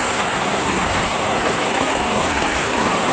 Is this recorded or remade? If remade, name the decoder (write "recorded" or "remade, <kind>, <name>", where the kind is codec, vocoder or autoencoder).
remade, codec, SNAC